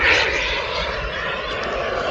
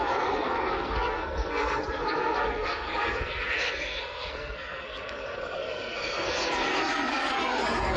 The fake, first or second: second